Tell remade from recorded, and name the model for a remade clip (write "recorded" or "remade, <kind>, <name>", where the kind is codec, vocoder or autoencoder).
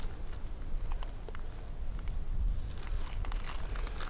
recorded